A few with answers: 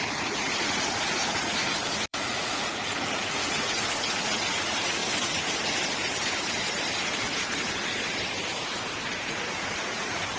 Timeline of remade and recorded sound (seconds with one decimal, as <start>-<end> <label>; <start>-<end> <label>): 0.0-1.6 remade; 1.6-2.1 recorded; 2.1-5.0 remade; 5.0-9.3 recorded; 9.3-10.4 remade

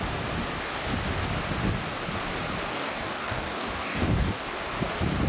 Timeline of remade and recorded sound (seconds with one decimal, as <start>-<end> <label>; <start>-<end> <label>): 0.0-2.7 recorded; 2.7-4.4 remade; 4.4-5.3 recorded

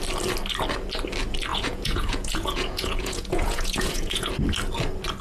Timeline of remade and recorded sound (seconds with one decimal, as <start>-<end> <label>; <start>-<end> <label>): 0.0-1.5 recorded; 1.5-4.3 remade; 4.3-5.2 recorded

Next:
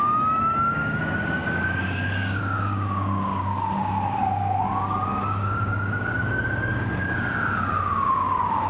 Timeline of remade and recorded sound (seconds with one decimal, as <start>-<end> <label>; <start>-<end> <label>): 0.0-8.7 remade